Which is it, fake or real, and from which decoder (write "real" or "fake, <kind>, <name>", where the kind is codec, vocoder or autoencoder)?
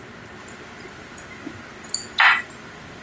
real